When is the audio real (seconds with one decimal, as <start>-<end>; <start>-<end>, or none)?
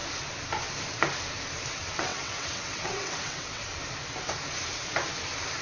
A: 0.0-1.7; 3.7-5.6